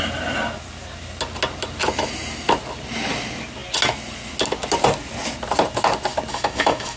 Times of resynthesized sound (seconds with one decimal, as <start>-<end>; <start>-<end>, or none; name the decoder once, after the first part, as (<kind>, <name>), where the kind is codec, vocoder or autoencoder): 6.3-7.0 (autoencoder, DAC-VAE)